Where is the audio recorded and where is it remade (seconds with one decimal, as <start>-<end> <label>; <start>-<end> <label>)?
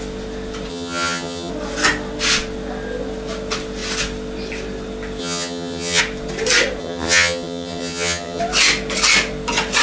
0.0-0.7 recorded; 0.7-1.5 remade; 1.5-5.2 recorded; 5.2-6.0 remade; 6.0-6.8 recorded; 6.8-8.4 remade; 8.4-9.8 recorded